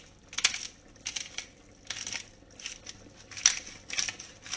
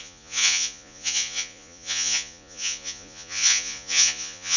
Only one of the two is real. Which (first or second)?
first